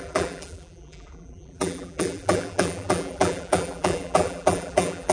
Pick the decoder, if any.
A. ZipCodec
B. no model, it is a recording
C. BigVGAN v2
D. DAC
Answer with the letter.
C